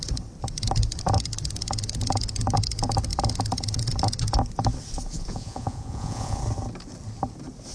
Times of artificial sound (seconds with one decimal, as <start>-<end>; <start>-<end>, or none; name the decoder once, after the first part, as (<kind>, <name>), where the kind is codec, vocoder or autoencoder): 5.1-6.4 (vocoder, Vocos)